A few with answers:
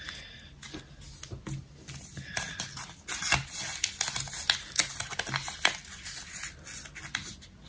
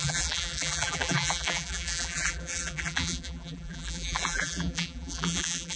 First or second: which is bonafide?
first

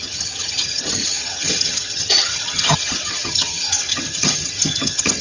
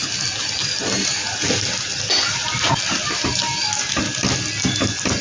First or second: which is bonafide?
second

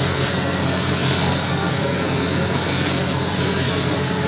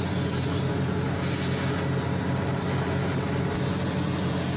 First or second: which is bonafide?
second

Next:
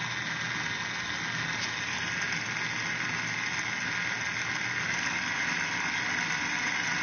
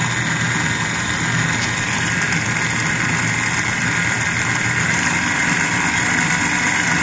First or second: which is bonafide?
first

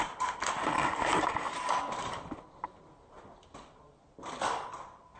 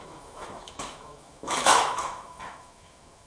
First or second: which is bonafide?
first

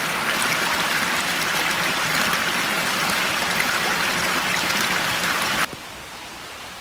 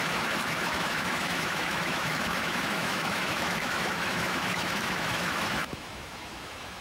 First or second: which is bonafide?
first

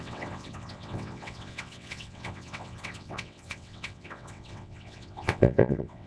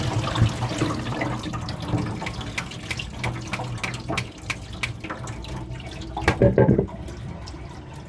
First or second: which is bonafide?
second